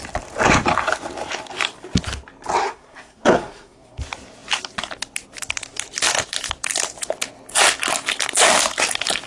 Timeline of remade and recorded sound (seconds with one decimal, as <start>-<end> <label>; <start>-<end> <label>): 0.0-2.6 recorded; 2.6-4.0 remade; 4.0-9.3 recorded

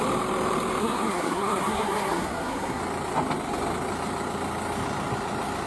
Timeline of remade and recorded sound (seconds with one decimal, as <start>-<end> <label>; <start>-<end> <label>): 0.0-0.8 recorded; 0.8-2.8 remade; 2.8-5.7 recorded

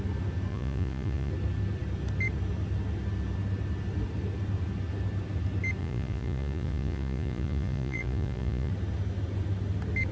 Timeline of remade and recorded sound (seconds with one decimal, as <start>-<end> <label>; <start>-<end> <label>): 0.0-0.5 recorded; 0.5-1.3 remade; 1.3-5.8 recorded; 5.8-8.7 remade; 8.7-10.1 recorded

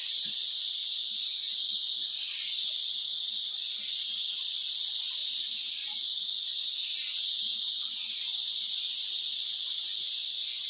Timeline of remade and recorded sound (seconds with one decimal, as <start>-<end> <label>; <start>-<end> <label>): 0.0-10.7 recorded